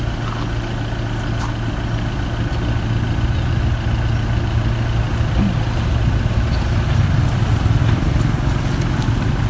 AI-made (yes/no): no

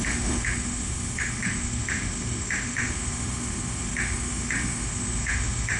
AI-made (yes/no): yes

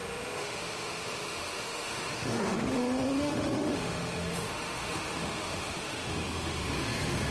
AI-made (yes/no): yes